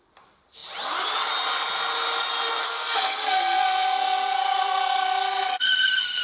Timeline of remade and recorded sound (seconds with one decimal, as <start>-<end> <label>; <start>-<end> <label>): 0.0-2.6 recorded; 2.6-6.2 remade